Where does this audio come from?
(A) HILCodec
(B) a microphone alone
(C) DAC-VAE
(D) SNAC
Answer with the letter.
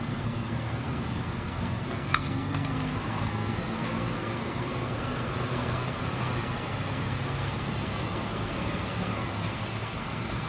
D